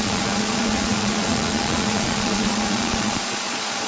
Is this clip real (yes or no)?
no